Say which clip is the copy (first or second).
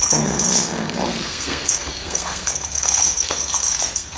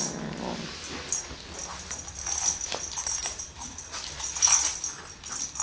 first